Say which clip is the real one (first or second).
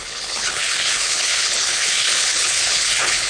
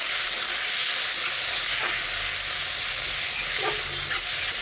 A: second